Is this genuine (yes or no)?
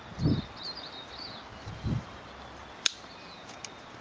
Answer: yes